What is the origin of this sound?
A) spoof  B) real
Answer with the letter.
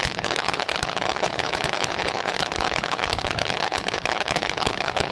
A